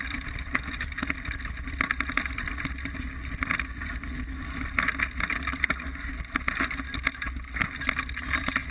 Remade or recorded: recorded